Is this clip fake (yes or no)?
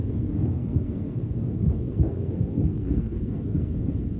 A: yes